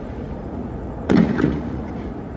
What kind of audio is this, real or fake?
fake